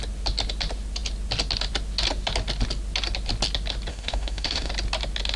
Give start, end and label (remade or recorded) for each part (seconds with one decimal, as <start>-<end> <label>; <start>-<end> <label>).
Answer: 0.0-3.9 recorded; 3.9-4.7 remade; 4.7-5.4 recorded